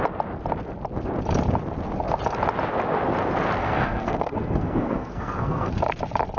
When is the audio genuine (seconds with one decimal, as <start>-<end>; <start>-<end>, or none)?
0.0-3.6; 5.7-6.4